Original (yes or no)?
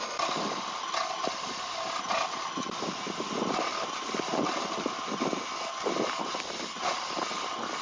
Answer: yes